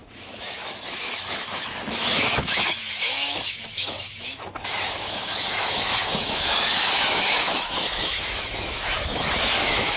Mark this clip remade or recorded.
remade